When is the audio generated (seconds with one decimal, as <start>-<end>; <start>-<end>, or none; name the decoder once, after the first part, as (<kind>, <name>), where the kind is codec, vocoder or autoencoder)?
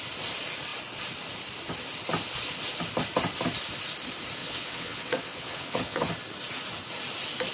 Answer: 4.4-6.1 (vocoder, WaveNeXt)